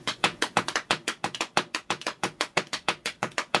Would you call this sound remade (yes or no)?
yes